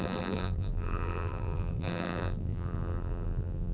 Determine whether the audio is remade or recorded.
remade